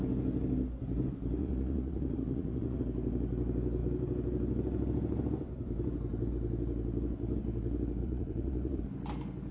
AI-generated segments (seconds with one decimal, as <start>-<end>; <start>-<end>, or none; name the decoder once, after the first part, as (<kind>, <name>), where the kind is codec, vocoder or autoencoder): 1.4-2.8 (vocoder, Vocos); 8.0-8.8

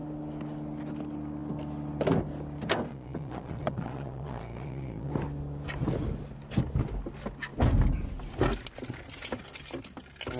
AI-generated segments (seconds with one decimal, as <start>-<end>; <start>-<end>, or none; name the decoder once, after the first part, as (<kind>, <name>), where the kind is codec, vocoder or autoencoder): 2.9-5.1 (vocoder, Vocos)

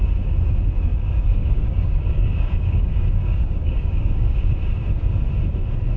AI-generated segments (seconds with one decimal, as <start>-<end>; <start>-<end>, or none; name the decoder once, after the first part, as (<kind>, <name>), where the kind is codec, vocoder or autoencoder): 0.9-4.5 (codec, DAC)